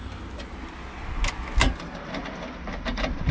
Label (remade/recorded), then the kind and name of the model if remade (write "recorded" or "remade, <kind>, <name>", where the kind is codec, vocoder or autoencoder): recorded